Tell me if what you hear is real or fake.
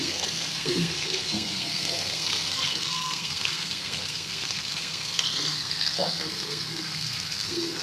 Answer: fake